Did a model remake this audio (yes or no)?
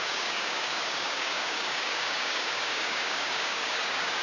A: yes